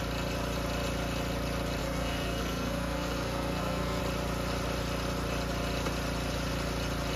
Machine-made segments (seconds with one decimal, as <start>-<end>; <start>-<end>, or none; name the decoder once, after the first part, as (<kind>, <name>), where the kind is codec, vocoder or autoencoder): 1.8-4.0 (codec, SNAC)